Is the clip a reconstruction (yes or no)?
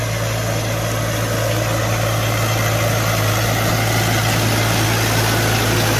no